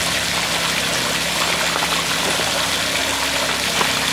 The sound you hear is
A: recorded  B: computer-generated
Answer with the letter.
A